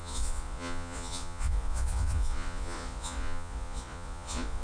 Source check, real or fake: fake